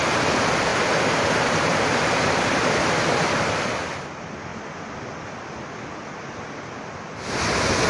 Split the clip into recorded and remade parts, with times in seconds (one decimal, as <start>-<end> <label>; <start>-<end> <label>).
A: 0.0-7.9 recorded